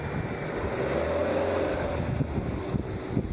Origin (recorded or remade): recorded